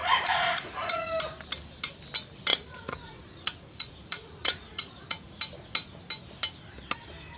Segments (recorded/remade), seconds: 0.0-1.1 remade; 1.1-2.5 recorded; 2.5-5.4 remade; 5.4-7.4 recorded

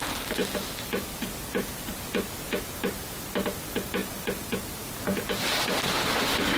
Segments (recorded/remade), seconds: 0.0-6.6 recorded